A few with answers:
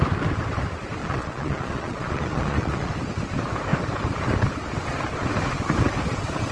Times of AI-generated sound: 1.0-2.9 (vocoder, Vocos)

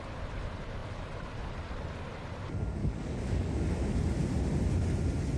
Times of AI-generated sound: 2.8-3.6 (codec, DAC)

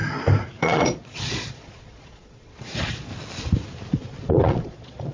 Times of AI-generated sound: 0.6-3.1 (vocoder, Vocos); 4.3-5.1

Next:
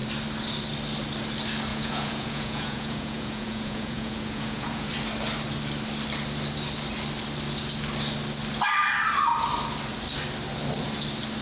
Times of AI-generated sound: 1.7-4.9 (vocoder, Vocos)